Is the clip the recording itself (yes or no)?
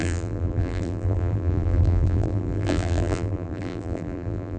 no